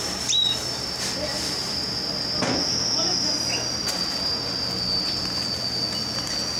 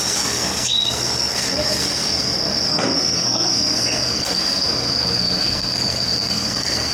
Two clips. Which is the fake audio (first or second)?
second